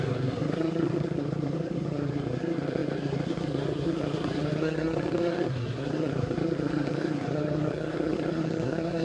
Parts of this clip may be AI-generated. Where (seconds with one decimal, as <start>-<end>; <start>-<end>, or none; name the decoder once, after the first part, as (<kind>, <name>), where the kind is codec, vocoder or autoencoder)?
0.0-9.0 (codec, SNAC)